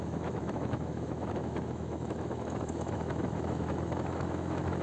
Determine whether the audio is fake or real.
fake